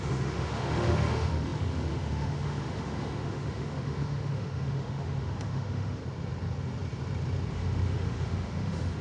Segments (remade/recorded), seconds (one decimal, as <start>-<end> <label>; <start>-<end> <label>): 0.0-6.0 remade; 6.0-7.5 recorded; 7.5-9.0 remade